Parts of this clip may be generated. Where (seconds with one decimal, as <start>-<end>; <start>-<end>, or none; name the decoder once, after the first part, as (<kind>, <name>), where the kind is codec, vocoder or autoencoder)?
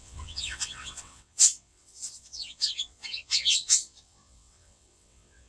0.0-5.5 (vocoder, WaveNeXt)